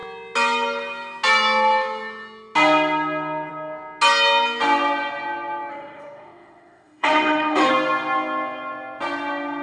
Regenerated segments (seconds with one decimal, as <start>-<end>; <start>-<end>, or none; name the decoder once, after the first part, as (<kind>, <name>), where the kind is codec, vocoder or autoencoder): 5.7-7.7 (autoencoder, DAC-VAE)